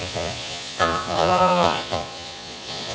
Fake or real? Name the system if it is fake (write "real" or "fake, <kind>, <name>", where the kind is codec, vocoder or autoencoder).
fake, vocoder, Vocos